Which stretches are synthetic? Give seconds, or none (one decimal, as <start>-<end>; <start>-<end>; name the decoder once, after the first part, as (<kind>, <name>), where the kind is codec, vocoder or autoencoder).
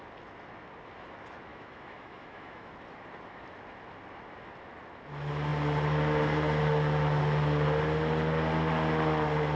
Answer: 1.5-2.7 (autoencoder, DAC-VAE)